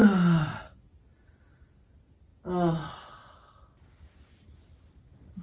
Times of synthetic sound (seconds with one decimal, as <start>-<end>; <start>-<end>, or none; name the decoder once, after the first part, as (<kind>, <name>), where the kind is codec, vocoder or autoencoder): none